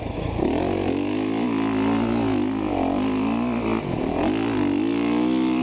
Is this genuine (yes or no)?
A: yes